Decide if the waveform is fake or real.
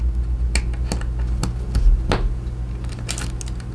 real